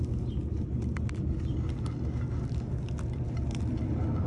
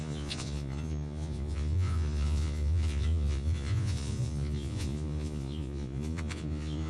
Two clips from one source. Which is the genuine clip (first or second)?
first